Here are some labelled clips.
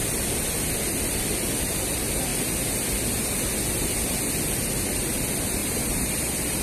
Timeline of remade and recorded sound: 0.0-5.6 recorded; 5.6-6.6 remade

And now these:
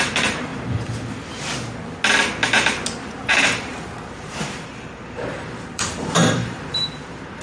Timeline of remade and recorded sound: 0.0-0.5 remade; 0.5-3.4 recorded; 3.4-7.4 remade